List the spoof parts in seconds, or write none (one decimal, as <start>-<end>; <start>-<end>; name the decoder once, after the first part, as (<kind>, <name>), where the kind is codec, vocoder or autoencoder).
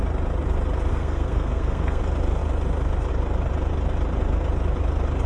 0.9-2.0 (codec, SNAC)